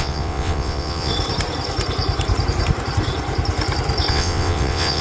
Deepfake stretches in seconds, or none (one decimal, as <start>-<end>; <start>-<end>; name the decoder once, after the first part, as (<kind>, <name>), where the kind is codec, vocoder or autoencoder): 0.0-1.1 (vocoder, WaveNeXt); 4.1-5.0